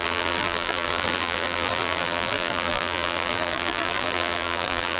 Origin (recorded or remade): remade